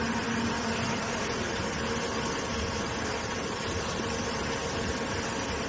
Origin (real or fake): real